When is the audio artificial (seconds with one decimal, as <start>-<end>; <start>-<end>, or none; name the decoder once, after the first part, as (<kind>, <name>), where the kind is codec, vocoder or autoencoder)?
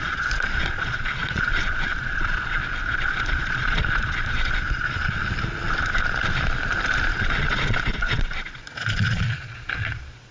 0.0-5.2 (vocoder, Vocos); 7.1-10.3